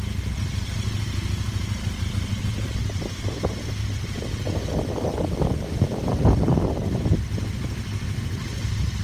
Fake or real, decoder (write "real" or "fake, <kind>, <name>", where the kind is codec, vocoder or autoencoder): real